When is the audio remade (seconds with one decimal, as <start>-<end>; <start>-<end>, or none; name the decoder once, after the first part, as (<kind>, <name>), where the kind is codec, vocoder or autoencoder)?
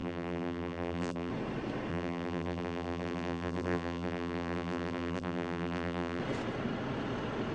0.0-1.3 (vocoder, BigVGAN v2); 1.9-6.2